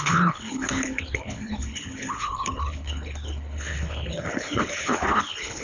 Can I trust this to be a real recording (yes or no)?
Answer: no